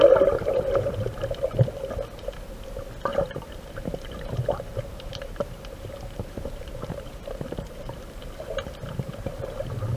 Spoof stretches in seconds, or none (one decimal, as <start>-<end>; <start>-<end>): 3.1-8.2